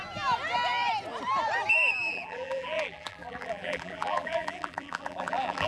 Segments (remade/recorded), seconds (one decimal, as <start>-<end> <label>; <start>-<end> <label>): 0.0-2.1 recorded; 2.1-5.7 remade

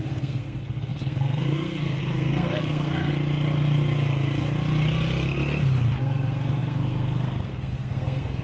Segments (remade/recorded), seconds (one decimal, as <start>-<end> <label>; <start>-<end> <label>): 0.0-3.1 remade; 3.1-6.0 recorded; 6.0-8.4 remade